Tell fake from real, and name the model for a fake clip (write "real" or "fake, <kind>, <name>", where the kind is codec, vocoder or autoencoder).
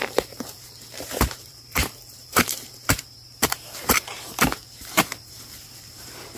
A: fake, vocoder, BigVGAN v2